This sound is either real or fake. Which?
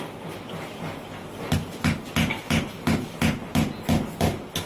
real